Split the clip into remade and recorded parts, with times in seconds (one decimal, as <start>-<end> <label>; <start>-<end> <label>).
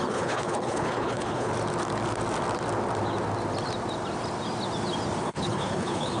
0.0-1.5 remade; 1.5-5.2 recorded; 5.2-6.2 remade